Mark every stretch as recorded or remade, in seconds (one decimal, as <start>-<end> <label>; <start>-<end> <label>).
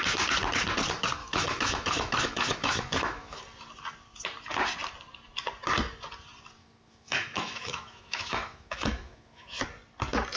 0.0-1.2 recorded; 1.2-3.4 remade; 3.4-6.6 recorded; 6.6-9.6 remade; 9.6-10.4 recorded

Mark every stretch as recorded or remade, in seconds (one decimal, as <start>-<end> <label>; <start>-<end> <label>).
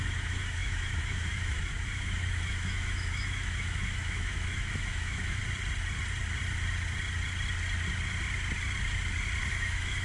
0.0-5.4 remade; 5.4-9.5 recorded; 9.5-10.0 remade